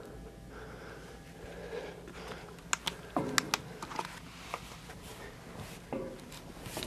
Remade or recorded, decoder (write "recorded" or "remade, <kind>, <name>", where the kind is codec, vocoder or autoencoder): recorded